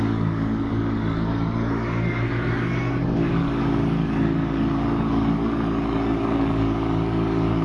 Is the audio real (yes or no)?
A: no